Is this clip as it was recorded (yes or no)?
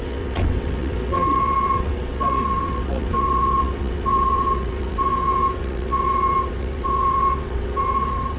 no